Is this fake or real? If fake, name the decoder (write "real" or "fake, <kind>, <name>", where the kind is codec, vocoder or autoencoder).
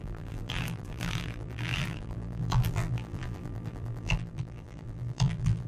fake, vocoder, BigVGAN v2